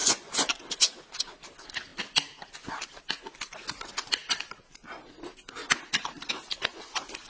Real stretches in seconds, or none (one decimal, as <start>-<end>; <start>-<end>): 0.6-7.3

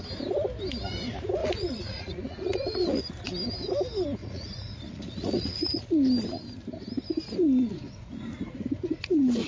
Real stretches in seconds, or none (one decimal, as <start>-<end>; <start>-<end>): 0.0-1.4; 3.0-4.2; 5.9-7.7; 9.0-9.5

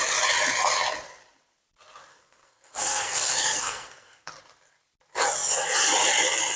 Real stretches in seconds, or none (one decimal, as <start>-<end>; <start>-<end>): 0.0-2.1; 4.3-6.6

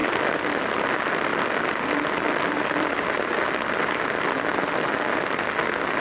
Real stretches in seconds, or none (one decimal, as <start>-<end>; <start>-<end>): 0.0-6.0

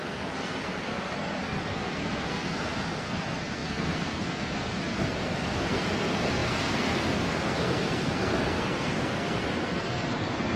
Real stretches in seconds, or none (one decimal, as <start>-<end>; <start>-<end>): none

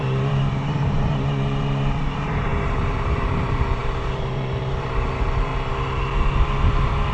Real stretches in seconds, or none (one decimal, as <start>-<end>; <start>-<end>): 5.5-7.1

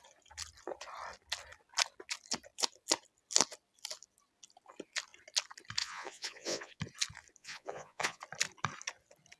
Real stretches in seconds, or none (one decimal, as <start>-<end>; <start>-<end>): 0.0-5.8; 6.8-7.4; 8.2-9.4

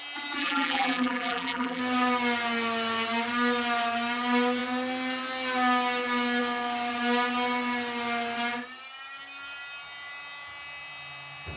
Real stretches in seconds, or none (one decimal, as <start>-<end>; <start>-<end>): 0.0-0.4; 1.8-11.6